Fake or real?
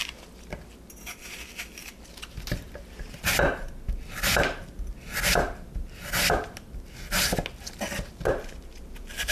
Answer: real